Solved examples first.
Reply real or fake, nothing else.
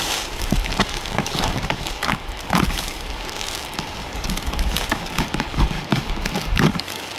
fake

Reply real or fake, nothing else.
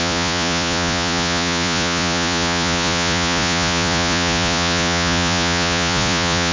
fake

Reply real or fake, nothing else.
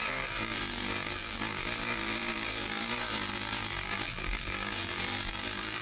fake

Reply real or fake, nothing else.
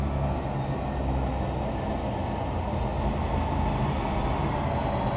real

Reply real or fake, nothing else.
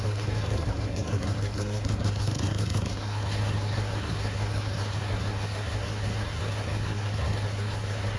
fake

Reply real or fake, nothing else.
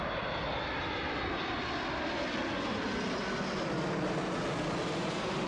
real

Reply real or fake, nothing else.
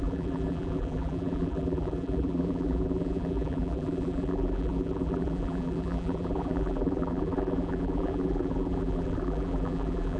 fake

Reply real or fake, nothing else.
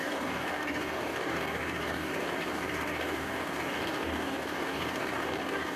fake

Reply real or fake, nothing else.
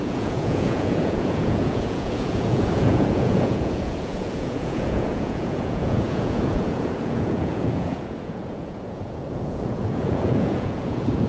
fake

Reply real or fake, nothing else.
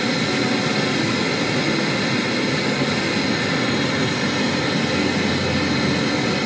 real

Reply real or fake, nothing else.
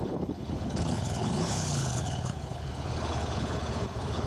fake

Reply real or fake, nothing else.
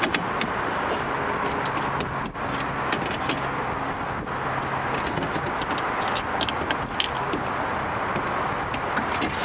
real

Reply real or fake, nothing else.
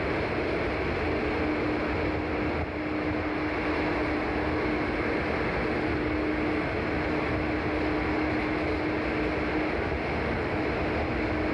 real